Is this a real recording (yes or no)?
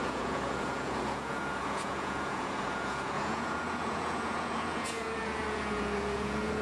no